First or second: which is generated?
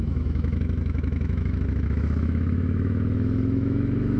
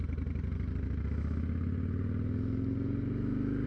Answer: first